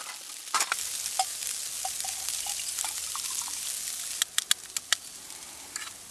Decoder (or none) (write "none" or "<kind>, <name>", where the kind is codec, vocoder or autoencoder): none